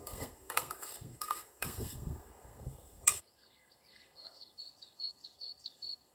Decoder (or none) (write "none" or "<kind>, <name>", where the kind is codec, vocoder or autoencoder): codec, SNAC